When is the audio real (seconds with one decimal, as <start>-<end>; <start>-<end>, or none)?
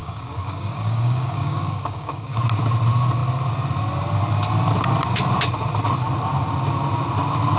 2.4-7.6